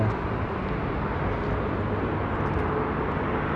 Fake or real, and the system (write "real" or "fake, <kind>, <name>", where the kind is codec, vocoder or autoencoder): real